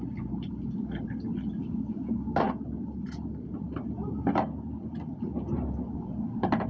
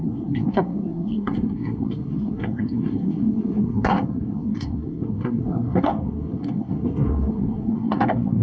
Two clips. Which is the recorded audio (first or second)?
first